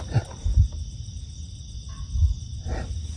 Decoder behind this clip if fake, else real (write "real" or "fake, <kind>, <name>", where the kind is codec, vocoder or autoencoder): real